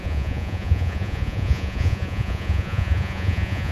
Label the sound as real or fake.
fake